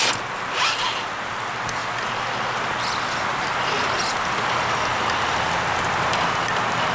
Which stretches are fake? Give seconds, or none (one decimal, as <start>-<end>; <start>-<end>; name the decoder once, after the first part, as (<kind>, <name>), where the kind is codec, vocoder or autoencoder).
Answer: none